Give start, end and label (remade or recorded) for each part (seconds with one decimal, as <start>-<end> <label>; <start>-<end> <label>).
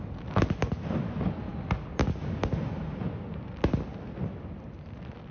0.0-5.3 recorded